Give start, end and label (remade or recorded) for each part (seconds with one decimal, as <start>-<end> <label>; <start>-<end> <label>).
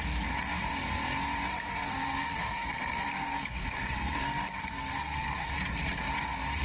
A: 0.0-1.5 recorded; 1.5-5.5 remade; 5.5-6.6 recorded